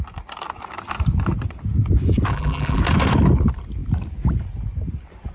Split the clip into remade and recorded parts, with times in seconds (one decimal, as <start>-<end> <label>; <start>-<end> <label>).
0.0-2.3 recorded; 2.3-2.8 remade; 2.8-5.3 recorded